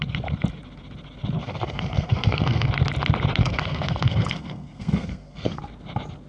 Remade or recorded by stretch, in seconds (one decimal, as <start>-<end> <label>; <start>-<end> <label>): 0.0-1.4 recorded; 1.4-2.7 remade; 2.7-3.4 recorded; 3.4-5.6 remade; 5.6-6.3 recorded